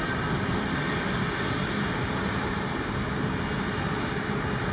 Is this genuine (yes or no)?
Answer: yes